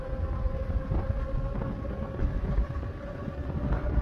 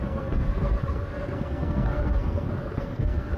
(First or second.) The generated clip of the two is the second